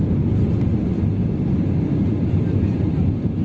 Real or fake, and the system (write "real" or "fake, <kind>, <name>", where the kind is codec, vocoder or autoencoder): fake, vocoder, BigVGAN v2